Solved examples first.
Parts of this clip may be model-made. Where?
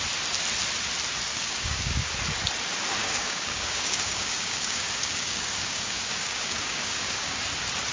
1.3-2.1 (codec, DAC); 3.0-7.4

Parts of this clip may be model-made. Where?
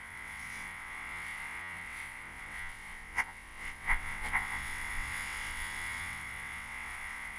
0.0-7.4 (vocoder, WaveNeXt)